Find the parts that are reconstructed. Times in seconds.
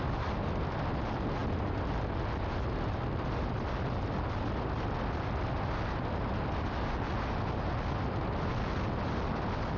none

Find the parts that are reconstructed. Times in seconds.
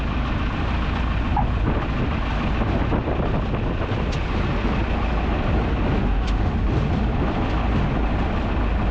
6.0-6.5 (autoencoder, DAC-VAE)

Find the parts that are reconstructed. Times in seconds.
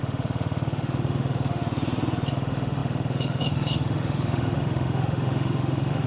0.0-1.6 (autoencoder, DAC-VAE); 2.3-6.1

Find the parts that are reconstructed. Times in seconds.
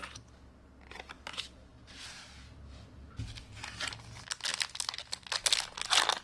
none